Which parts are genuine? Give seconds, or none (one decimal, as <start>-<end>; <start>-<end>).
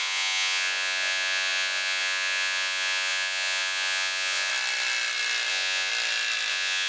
4.5-5.5; 5.9-6.5